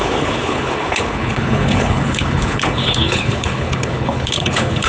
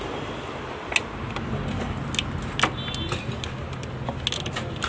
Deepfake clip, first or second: first